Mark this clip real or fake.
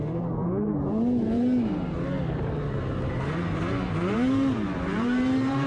fake